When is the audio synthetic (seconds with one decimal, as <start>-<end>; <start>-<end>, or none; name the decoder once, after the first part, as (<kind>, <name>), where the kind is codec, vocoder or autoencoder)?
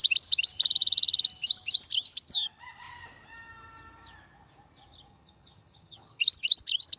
5.1-6.2 (vocoder, HiFi-GAN)